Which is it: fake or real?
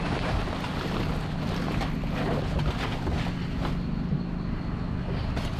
real